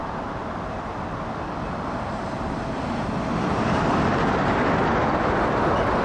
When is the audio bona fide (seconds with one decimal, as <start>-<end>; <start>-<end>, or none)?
0.4-4.0